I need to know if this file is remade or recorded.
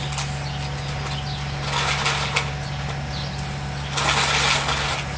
recorded